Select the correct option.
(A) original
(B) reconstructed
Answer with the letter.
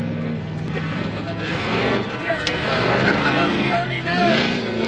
B